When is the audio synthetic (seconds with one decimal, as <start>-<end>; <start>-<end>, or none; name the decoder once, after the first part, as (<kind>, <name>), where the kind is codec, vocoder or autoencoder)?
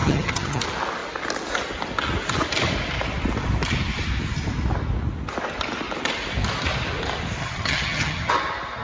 0.0-0.6 (vocoder, HiFi-GAN); 7.4-8.3